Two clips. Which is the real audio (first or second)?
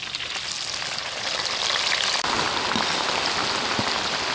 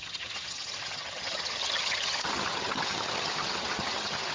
first